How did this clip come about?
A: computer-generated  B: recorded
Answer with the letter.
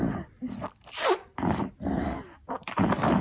A